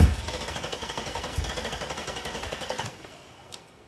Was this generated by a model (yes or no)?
yes